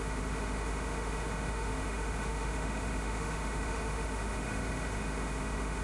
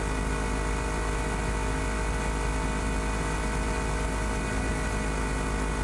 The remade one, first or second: first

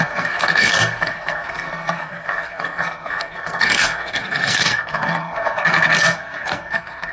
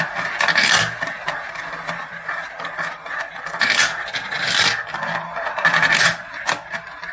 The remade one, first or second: first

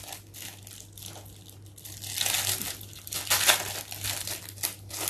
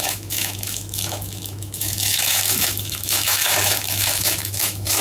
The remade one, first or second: second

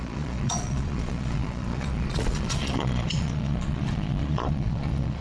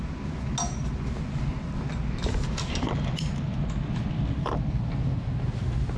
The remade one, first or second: first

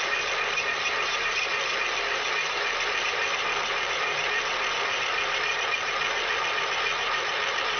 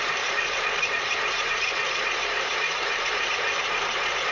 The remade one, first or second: second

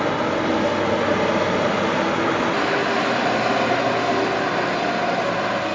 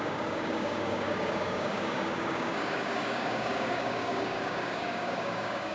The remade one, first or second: second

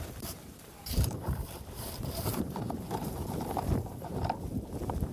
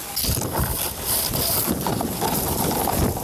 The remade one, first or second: first